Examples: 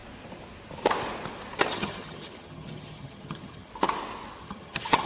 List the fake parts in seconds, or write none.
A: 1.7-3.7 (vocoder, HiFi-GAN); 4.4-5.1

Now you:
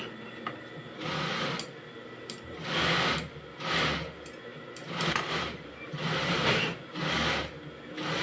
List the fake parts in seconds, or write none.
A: 4.5-6.9 (vocoder, BigVGAN v2)

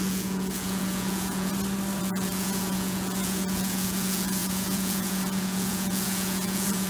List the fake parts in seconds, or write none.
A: 0.0-1.5 (vocoder, Vocos); 2.0-6.9

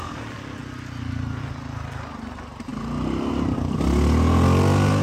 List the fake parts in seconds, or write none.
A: none

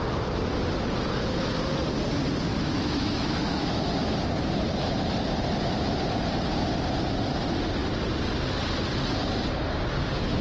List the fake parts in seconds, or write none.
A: 2.5-3.9 (autoencoder, DAC-VAE)

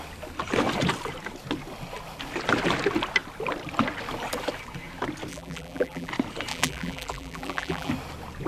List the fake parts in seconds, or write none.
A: 5.3-6.1 (vocoder, BigVGAN v2); 6.5-7.9

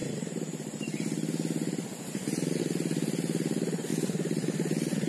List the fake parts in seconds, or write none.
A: none